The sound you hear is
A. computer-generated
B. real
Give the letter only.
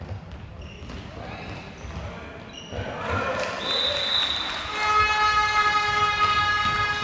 B